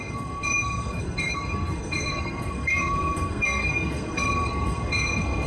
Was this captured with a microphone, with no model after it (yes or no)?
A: no